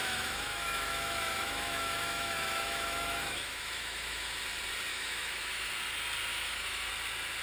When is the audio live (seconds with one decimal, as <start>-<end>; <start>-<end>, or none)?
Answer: 4.4-4.9; 5.7-6.3; 6.9-7.4